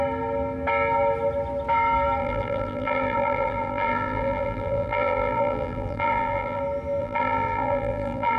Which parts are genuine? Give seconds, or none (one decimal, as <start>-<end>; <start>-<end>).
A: 0.0-2.2; 6.6-7.0